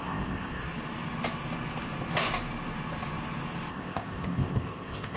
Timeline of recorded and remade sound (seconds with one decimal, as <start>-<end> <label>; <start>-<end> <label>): 0.0-0.6 remade; 0.6-3.7 recorded; 3.7-5.2 remade